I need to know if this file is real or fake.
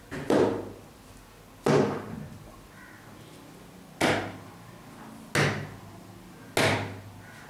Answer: real